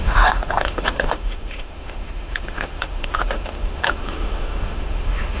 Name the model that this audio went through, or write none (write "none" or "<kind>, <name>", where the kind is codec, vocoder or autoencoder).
autoencoder, DAC-VAE